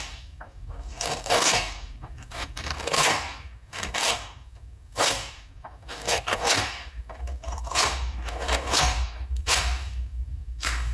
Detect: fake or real fake